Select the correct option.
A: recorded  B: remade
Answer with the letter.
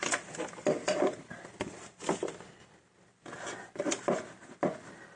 A